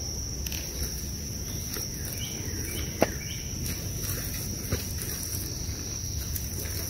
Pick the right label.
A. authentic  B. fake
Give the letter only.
A